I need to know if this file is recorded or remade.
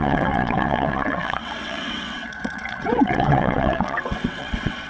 remade